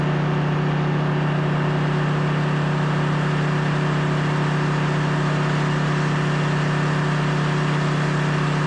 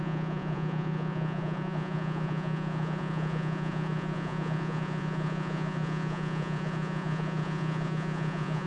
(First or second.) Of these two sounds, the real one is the first